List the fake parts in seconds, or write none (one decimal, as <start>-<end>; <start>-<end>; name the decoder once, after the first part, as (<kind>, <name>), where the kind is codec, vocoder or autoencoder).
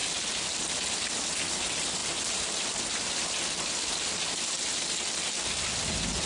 none